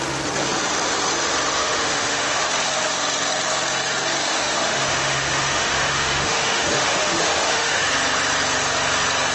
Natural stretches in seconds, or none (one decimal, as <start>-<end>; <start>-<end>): 0.0-1.6; 2.4-4.3; 7.8-9.3